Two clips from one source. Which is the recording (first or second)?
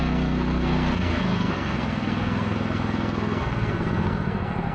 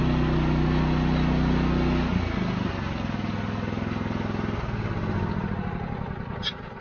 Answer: second